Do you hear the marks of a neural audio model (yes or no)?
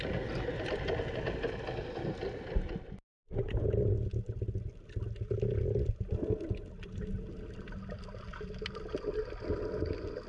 no